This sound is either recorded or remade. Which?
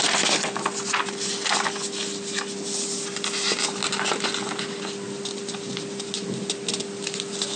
recorded